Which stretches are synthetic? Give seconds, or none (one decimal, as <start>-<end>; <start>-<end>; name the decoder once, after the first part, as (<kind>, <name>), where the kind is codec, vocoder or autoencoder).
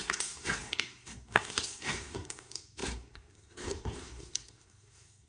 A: 0.0-5.3 (codec, SNAC)